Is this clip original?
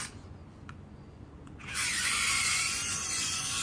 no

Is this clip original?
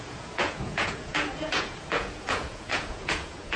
no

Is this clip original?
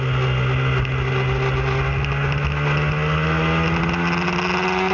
yes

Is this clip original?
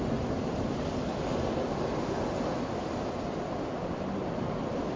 yes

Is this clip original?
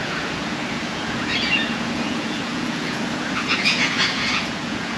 no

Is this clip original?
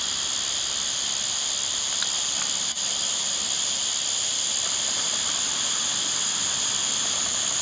yes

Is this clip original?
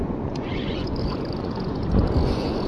no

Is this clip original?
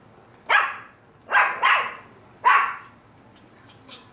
yes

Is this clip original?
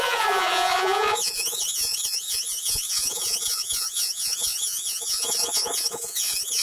no